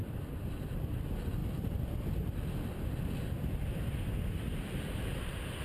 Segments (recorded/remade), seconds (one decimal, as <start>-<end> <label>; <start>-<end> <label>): 0.0-5.6 recorded

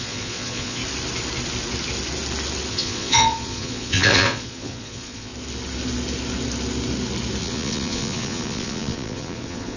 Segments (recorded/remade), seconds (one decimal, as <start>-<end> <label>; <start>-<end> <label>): 0.0-0.8 remade; 0.8-2.7 recorded; 2.7-5.3 remade; 5.3-7.4 recorded; 7.4-9.8 remade

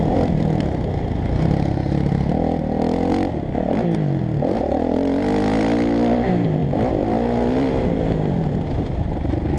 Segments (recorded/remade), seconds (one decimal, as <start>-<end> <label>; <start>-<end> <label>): 0.0-9.6 recorded

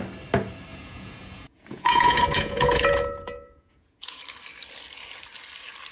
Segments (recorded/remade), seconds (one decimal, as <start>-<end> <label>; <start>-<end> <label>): 0.0-0.7 recorded; 0.7-4.2 remade; 4.2-5.9 recorded

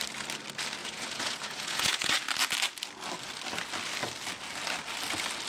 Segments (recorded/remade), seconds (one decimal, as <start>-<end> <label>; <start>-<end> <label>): 0.0-0.8 recorded; 0.8-2.1 remade; 2.1-5.5 recorded

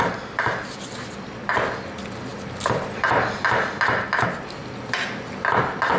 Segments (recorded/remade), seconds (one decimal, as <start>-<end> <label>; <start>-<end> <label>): 0.0-6.0 recorded